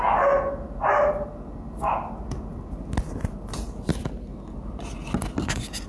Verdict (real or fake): real